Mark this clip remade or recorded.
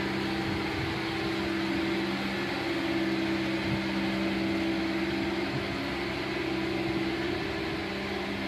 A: recorded